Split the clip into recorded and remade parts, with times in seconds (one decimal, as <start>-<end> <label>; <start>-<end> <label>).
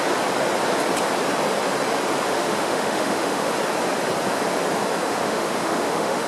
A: 0.0-2.3 recorded; 2.3-3.5 remade; 3.5-5.0 recorded; 5.0-6.3 remade